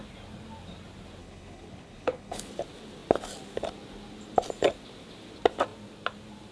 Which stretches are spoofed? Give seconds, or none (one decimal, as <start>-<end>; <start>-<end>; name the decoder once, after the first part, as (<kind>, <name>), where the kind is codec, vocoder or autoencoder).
1.2-2.5 (codec, HILCodec)